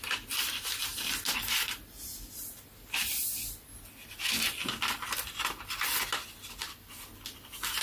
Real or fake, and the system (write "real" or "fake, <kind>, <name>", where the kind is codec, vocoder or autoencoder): real